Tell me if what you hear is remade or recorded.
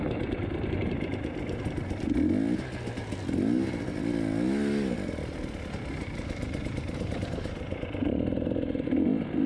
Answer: recorded